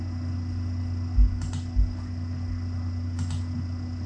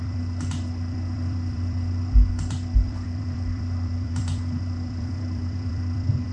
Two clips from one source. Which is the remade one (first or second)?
second